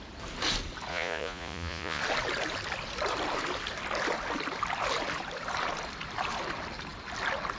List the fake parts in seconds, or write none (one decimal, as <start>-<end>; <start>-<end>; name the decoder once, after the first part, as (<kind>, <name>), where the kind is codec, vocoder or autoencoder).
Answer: 0.9-2.0 (vocoder, Vocos)